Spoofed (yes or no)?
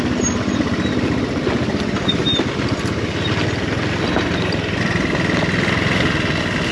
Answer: no